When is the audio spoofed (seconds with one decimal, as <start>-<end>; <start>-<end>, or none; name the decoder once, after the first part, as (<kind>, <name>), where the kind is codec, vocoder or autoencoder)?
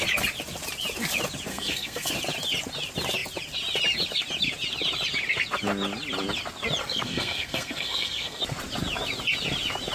1.5-2.1 (codec, SNAC); 6.8-8.4